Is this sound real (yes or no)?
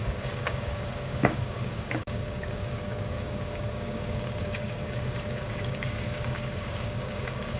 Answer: no